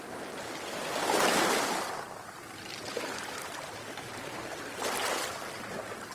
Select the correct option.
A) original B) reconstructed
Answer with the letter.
A